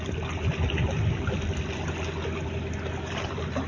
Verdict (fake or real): real